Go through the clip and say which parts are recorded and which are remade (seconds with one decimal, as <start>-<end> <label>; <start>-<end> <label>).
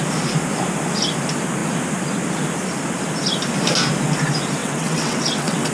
0.0-4.6 recorded; 4.6-5.7 remade